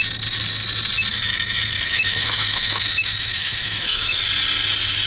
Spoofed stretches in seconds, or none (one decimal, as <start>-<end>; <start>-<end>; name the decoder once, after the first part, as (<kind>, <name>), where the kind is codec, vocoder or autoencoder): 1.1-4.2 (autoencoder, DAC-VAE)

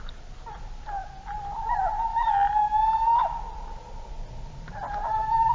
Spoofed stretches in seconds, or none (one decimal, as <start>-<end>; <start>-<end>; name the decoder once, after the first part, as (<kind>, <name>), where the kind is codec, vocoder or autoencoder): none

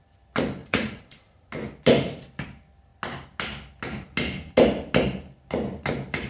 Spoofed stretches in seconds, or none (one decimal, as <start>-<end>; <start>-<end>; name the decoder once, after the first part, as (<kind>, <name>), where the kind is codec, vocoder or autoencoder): 0.6-1.5 (vocoder, Vocos)

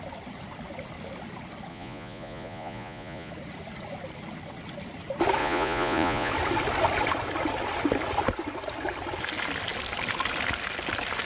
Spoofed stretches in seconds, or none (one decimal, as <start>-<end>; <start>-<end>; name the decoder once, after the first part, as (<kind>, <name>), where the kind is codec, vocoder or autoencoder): 1.7-3.3 (vocoder, Vocos); 5.4-6.3

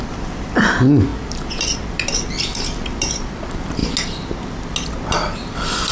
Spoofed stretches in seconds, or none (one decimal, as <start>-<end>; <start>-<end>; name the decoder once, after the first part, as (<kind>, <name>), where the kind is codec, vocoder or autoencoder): 0.0-1.1 (vocoder, BigVGAN v2); 1.9-3.8; 5.4-5.9